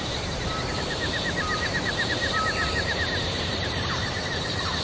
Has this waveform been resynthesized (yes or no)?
yes